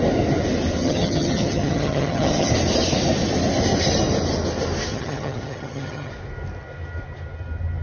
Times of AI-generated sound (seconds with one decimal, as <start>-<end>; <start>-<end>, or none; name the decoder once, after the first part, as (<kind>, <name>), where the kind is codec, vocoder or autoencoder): 0.8-2.5 (vocoder, HiFi-GAN); 4.9-6.1